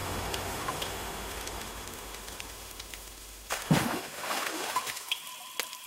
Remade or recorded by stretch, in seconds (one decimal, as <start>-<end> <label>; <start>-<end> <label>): 0.0-5.2 remade; 5.2-5.9 recorded